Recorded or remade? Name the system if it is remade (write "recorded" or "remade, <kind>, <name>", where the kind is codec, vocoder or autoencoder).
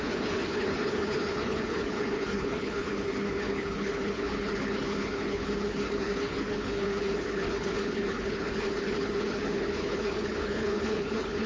remade, codec, HILCodec